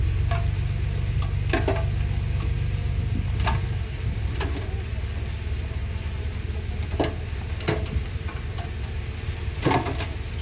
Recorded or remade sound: recorded